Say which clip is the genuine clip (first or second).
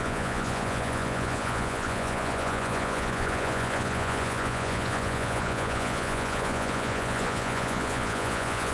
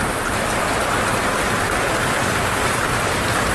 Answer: second